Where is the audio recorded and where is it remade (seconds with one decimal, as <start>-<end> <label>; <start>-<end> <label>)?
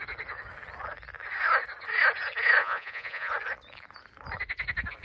0.0-2.6 recorded; 2.6-3.3 remade; 3.3-5.0 recorded